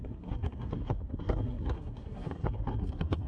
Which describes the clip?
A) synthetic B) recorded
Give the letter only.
A